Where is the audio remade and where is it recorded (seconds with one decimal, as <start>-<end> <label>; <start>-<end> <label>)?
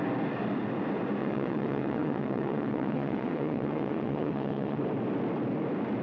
0.0-1.2 recorded; 1.2-4.8 remade; 4.8-6.0 recorded